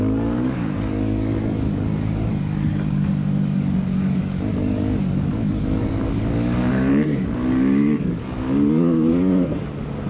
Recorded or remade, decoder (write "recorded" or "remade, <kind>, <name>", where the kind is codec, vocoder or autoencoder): remade, codec, DAC